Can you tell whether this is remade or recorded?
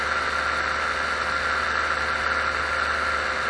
recorded